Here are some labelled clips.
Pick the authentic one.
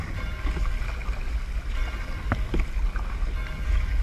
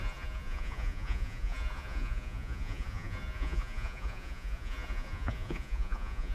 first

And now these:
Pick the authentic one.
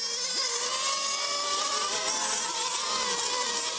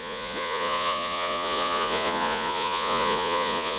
first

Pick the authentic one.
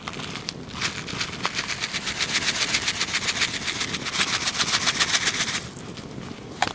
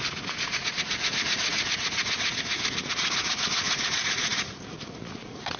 first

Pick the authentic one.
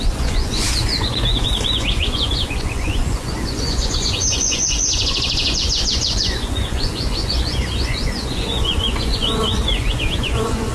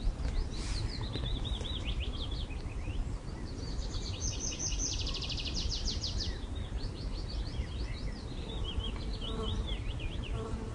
second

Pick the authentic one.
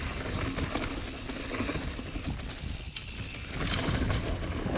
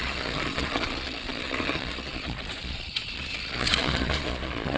first